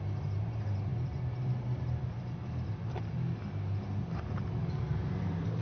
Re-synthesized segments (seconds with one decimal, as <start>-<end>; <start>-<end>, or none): 0.9-3.0